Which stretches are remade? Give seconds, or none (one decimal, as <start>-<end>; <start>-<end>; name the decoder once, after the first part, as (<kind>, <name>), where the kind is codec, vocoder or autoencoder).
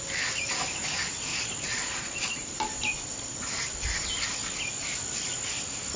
1.3-2.5 (vocoder, Vocos)